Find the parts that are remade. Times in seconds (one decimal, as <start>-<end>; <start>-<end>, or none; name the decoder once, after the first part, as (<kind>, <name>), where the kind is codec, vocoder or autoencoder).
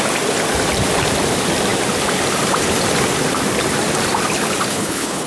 4.7-5.3 (codec, HILCodec)